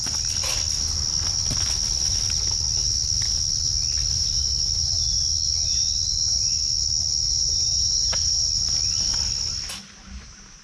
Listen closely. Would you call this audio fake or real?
real